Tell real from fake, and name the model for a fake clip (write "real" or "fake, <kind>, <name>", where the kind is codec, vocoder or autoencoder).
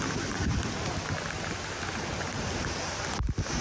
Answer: real